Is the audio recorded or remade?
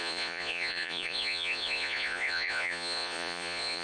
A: remade